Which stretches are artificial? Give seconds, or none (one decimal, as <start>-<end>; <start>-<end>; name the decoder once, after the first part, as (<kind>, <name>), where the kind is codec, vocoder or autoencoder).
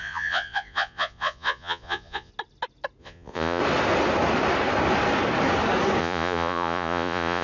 0.0-2.3 (vocoder, Vocos); 3.0-3.6; 6.0-7.4